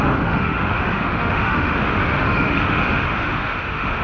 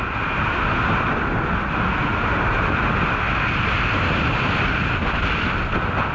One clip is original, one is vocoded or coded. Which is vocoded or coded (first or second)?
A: first